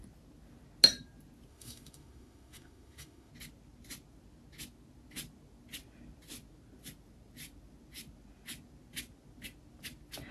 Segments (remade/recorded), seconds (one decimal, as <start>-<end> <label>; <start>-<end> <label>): 0.0-1.5 recorded; 1.5-3.3 remade; 3.3-10.3 recorded